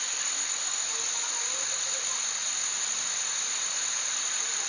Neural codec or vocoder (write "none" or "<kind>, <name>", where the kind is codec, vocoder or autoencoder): none